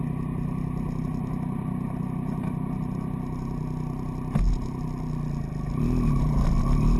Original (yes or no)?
yes